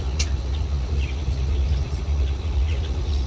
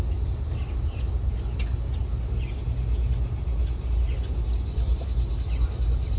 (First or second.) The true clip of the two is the second